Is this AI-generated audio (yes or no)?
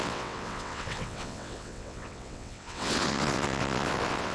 yes